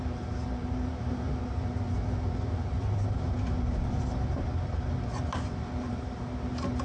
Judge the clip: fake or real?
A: fake